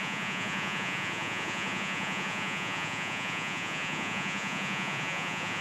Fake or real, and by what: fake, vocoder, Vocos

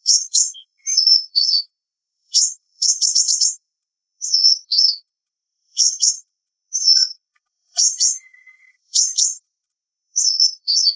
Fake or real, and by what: fake, codec, SNAC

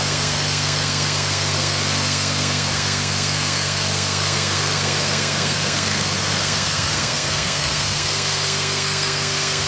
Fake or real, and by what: fake, codec, SNAC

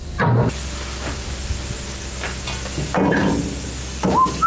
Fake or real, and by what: real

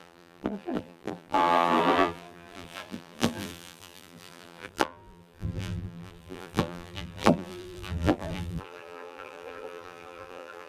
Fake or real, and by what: fake, vocoder, BigVGAN v2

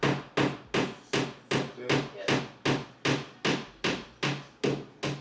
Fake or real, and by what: real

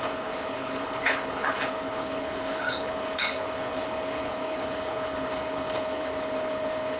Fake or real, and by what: fake, codec, HILCodec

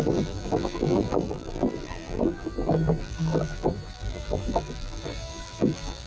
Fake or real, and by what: fake, vocoder, BigVGAN v2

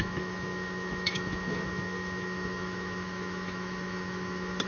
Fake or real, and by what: fake, autoencoder, DAC-VAE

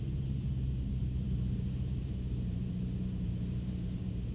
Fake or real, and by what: fake, vocoder, BigVGAN v2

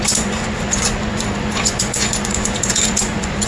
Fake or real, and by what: fake, vocoder, Vocos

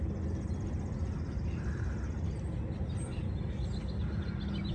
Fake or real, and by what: real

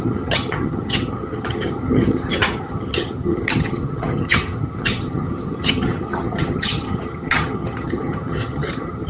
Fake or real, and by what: fake, vocoder, HiFi-GAN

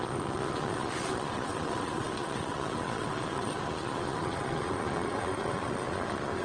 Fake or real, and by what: fake, vocoder, Vocos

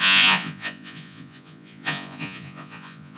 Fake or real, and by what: fake, vocoder, Vocos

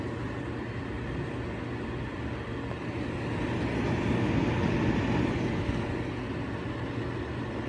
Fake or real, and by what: real